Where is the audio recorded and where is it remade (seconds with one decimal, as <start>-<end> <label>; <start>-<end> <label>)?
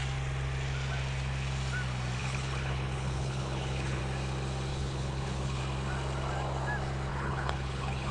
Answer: 0.0-2.2 recorded; 2.2-4.0 remade; 4.0-4.7 recorded; 4.7-5.6 remade; 5.6-7.1 recorded; 7.1-8.1 remade